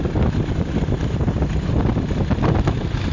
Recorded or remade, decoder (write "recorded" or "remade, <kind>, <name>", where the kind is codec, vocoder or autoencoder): recorded